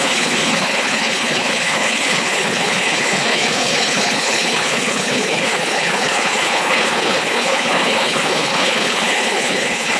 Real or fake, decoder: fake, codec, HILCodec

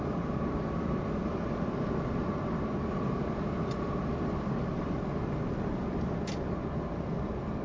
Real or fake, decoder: real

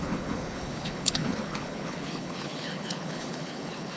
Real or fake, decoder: fake, codec, HILCodec